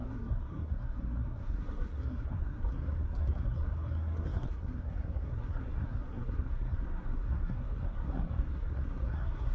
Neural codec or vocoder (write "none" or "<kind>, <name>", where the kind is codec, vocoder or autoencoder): codec, SNAC